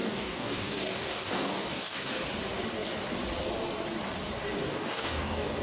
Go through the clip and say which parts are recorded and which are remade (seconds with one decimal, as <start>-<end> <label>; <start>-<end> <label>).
0.0-2.1 remade; 2.1-4.7 recorded; 4.7-5.6 remade